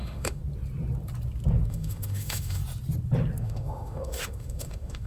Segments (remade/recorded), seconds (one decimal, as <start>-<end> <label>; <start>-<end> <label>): 0.0-0.4 remade; 0.4-1.7 recorded; 1.7-2.6 remade; 2.6-3.4 recorded; 3.4-5.1 remade